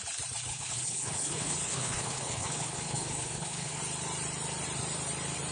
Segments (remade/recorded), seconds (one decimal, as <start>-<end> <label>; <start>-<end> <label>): 0.0-0.5 recorded; 0.5-3.8 remade; 3.8-5.5 recorded

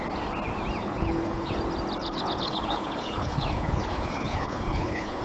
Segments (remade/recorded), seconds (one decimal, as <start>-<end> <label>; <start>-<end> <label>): 0.0-0.8 recorded; 0.8-1.5 remade; 1.5-2.0 recorded; 2.0-5.2 remade